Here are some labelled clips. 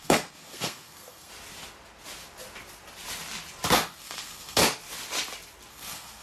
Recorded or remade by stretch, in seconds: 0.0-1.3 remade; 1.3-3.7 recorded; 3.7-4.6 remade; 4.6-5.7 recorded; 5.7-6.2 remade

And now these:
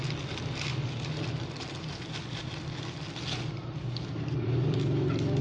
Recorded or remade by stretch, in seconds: 0.0-5.4 recorded